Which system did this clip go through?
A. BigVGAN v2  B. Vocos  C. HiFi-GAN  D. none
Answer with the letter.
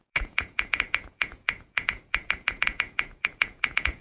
B